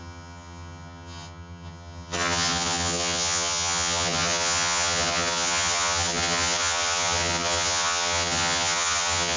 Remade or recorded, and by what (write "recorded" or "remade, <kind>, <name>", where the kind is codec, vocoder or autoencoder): remade, vocoder, HiFi-GAN